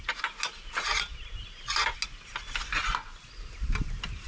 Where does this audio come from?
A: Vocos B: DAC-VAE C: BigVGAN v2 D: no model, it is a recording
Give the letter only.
D